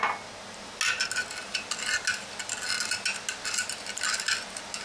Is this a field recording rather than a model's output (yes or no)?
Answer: yes